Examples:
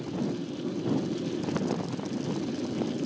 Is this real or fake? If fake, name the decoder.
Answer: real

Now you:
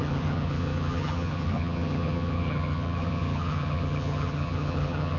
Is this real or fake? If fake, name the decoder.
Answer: fake, vocoder, HiFi-GAN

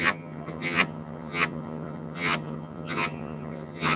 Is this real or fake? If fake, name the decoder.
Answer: fake, vocoder, HiFi-GAN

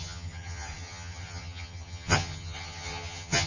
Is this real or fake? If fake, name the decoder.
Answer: fake, vocoder, HiFi-GAN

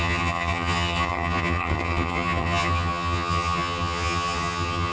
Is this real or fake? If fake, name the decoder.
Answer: fake, vocoder, HiFi-GAN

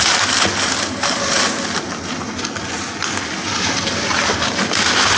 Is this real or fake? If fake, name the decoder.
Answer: real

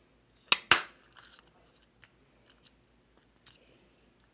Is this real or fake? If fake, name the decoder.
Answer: real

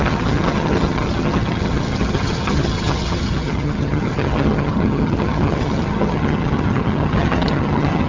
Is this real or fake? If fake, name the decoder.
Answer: fake, vocoder, HiFi-GAN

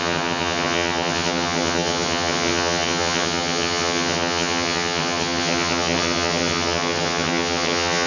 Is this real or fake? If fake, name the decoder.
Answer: fake, vocoder, HiFi-GAN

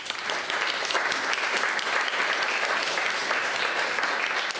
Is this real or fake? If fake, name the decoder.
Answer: real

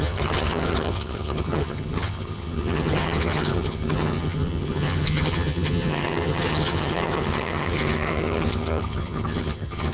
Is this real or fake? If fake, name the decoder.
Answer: fake, vocoder, HiFi-GAN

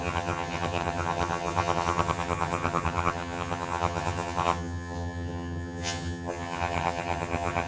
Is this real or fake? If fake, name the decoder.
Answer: fake, vocoder, HiFi-GAN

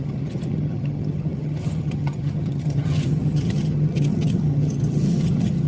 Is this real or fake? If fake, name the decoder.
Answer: fake, vocoder, HiFi-GAN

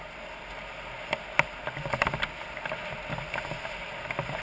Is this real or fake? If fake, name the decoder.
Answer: real